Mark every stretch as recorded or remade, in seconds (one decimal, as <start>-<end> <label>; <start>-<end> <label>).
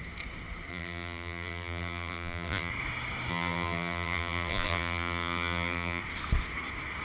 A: 0.0-0.7 recorded; 0.7-2.7 remade; 2.7-3.3 recorded; 3.3-6.0 remade; 6.0-7.0 recorded